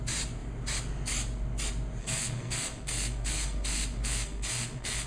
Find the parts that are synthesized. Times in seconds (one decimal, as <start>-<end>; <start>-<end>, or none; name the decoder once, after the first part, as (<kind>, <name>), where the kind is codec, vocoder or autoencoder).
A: 2.0-5.1 (codec, SNAC)